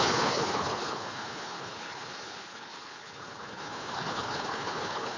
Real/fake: fake